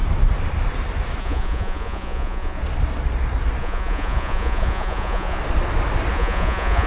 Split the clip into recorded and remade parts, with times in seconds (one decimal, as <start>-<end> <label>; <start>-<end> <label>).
0.0-1.2 recorded; 1.2-2.6 remade; 2.6-3.6 recorded; 3.6-5.4 remade; 5.4-6.1 recorded; 6.1-6.9 remade